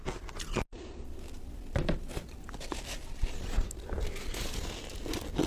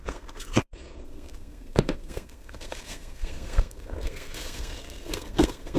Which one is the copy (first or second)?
second